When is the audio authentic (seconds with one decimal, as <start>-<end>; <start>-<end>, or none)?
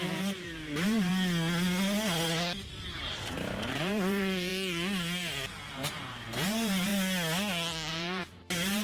1.1-3.1; 4.5-5.7; 6.9-7.9